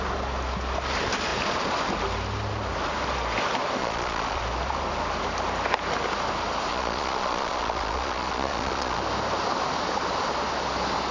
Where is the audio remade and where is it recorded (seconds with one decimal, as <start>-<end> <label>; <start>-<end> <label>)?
0.0-3.8 recorded; 3.8-4.4 remade; 4.4-6.7 recorded; 6.7-9.0 remade; 9.0-11.1 recorded